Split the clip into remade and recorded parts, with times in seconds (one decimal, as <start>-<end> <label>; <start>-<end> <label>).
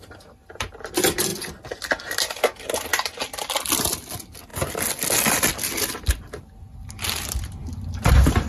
0.0-8.5 recorded